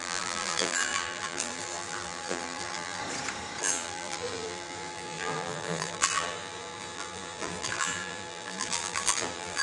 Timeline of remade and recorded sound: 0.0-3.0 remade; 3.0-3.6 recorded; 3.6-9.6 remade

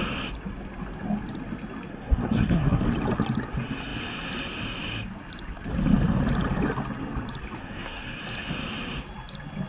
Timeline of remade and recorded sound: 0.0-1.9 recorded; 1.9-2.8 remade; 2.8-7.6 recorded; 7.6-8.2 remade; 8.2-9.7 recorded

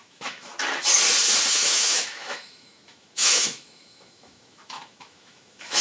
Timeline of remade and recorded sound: 0.0-0.5 remade; 0.5-1.5 recorded; 1.5-5.8 remade

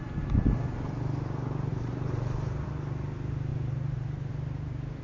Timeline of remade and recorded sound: 0.0-1.7 recorded; 1.7-2.7 remade; 2.7-3.5 recorded; 3.5-4.3 remade; 4.3-5.0 recorded

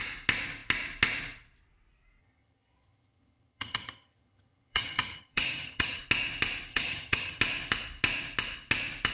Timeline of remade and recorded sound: 0.0-2.2 recorded; 2.2-6.0 remade; 6.0-6.7 recorded; 6.7-7.4 remade; 7.4-9.1 recorded

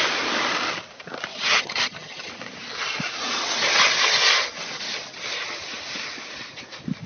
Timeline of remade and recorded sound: 0.0-1.3 recorded; 1.3-2.3 remade; 2.3-7.1 recorded